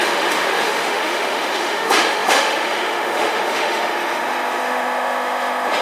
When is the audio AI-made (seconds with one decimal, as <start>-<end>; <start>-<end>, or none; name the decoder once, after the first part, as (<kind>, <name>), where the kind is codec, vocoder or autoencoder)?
0.0-5.8 (autoencoder, DAC-VAE)